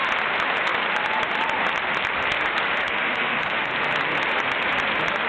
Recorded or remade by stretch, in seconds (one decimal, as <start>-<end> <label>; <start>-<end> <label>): 0.0-2.8 recorded; 2.8-3.7 remade; 3.7-5.3 recorded